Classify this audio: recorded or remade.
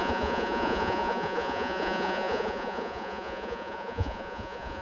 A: remade